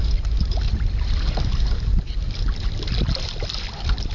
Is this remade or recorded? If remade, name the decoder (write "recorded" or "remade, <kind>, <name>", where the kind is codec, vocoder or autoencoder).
recorded